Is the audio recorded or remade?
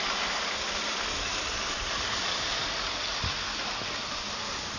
recorded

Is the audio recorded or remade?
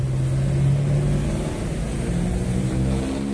recorded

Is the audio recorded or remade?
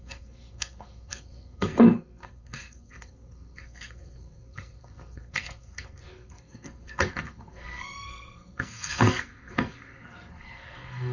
remade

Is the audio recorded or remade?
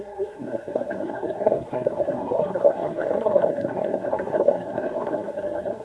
remade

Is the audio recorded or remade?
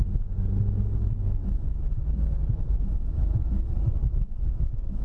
recorded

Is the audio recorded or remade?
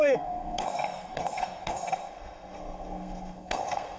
remade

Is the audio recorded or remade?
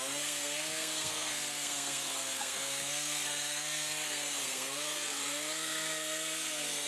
remade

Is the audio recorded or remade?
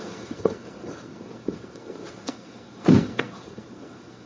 remade